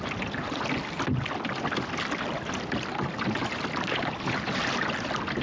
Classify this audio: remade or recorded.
recorded